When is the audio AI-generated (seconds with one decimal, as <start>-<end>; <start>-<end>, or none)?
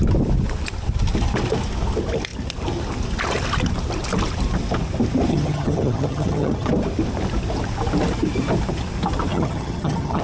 5.3-6.7; 9.3-10.2